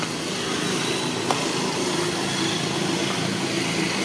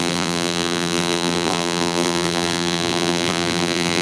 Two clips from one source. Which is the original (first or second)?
first